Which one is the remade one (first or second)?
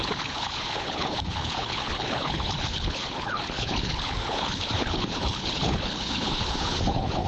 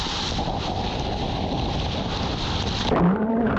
first